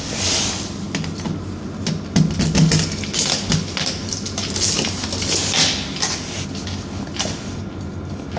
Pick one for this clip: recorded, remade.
recorded